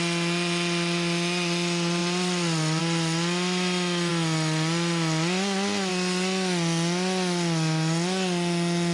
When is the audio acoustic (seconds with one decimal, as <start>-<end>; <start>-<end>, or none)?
0.0-2.0; 2.8-8.9